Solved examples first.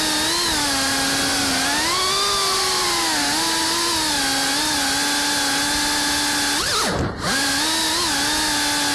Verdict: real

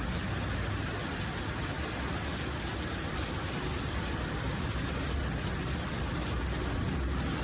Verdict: real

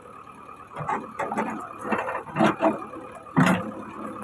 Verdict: real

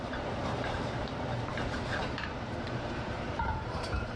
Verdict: fake